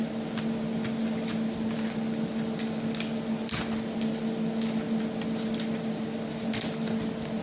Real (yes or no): yes